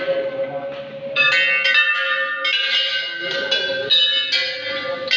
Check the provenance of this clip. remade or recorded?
recorded